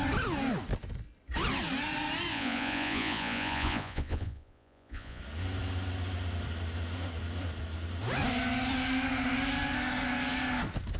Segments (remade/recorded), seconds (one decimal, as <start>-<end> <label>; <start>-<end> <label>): 0.0-2.3 recorded; 2.3-5.2 remade; 5.2-11.0 recorded